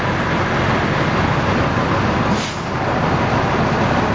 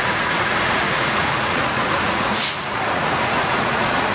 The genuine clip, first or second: first